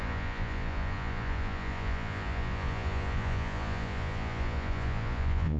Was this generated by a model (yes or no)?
yes